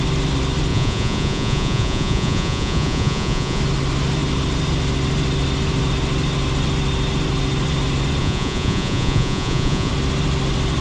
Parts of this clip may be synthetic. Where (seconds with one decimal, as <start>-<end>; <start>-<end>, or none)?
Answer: 0.7-3.6; 8.2-9.9